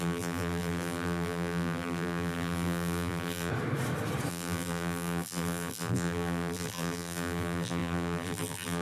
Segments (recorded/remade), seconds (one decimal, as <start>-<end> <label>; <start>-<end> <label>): 0.0-3.5 remade; 3.5-4.3 recorded; 4.3-8.8 remade